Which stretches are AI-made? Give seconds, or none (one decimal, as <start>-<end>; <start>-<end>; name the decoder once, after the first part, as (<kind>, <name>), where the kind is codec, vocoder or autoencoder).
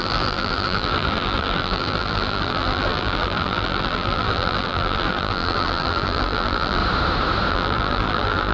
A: 0.0-6.8 (vocoder, BigVGAN v2); 7.5-8.5